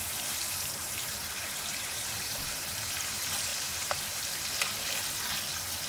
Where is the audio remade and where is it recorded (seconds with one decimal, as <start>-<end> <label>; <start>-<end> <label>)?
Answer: 0.0-2.8 remade; 2.8-3.5 recorded; 3.5-4.0 remade; 4.0-5.9 recorded